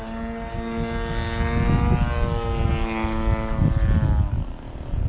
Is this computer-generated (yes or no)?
no